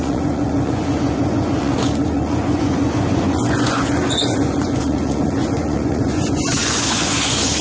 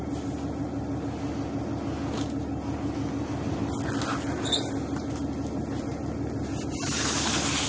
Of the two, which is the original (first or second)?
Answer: second